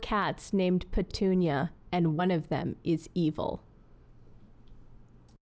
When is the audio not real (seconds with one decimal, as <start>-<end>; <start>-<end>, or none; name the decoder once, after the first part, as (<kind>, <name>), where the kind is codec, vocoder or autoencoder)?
1.1-2.2 (codec, DAC)